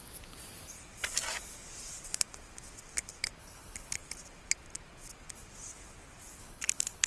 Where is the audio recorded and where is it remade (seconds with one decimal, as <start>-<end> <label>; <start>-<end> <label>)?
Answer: 0.0-3.4 recorded; 3.4-4.0 remade; 4.0-6.4 recorded; 6.4-7.1 remade